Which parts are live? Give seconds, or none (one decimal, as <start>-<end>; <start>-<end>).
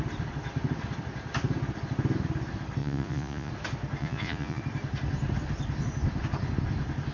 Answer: 0.0-2.8; 3.5-4.0; 4.6-7.1